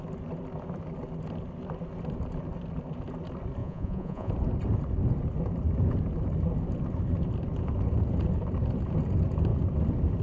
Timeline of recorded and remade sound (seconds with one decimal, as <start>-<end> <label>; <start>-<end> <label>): 0.0-3.6 recorded; 3.6-4.3 remade; 4.3-10.2 recorded